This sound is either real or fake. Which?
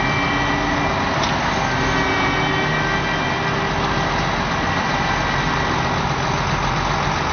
real